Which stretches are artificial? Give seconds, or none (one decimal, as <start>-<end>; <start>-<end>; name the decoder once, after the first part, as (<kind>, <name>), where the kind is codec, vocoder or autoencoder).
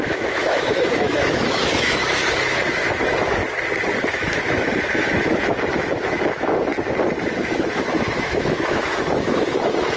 0.0-3.4 (autoencoder, DAC-VAE); 4.1-6.7; 7.2-10.0